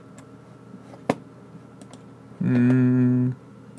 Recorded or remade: recorded